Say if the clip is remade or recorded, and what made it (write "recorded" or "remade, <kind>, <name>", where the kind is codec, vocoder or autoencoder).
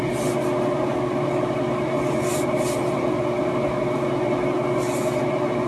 recorded